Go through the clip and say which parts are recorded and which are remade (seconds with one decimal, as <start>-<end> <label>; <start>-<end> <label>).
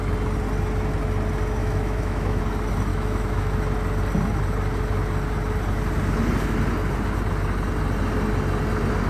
0.0-1.6 recorded; 1.6-2.4 remade; 2.4-2.9 recorded; 2.9-3.5 remade; 3.5-9.1 recorded